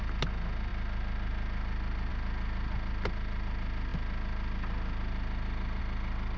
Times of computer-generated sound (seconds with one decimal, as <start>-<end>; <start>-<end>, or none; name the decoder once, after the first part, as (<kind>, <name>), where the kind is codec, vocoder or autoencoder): none